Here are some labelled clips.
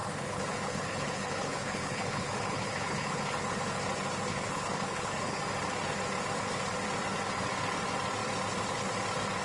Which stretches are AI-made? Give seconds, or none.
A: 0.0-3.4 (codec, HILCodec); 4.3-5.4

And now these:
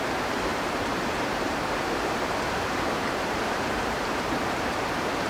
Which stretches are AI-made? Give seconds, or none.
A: 0.0-5.3 (vocoder, BigVGAN v2)

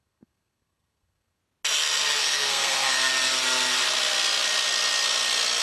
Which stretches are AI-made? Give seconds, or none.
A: 0.0-1.4 (codec, SNAC); 2.2-3.1

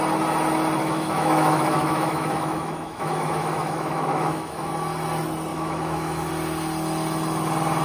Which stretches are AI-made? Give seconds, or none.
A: 0.8-4.7 (autoencoder, DAC-VAE); 5.5-6.3

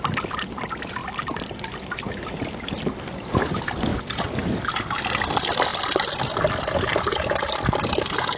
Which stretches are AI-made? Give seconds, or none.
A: none

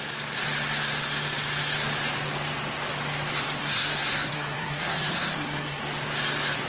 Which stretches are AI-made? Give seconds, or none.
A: 3.6-5.8 (codec, SNAC)